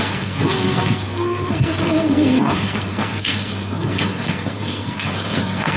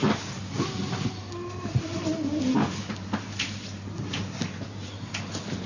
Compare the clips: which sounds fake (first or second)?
first